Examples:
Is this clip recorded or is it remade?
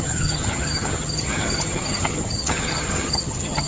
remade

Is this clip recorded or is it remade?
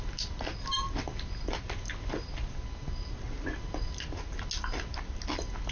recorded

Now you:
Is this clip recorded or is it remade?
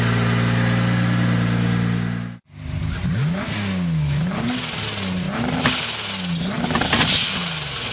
recorded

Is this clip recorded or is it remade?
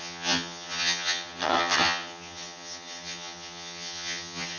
remade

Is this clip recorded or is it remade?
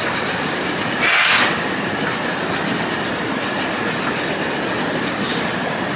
recorded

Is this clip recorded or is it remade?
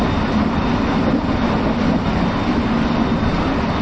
recorded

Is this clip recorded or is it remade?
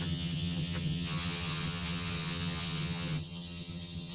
remade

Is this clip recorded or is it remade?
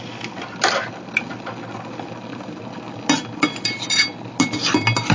recorded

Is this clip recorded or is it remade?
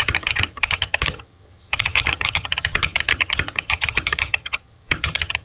remade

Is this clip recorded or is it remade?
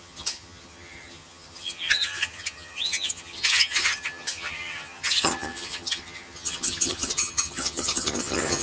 remade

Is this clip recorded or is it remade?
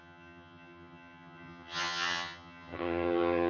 remade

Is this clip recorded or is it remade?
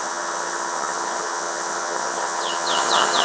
remade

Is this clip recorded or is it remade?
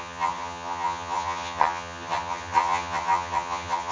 remade